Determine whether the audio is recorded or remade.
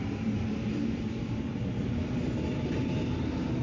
recorded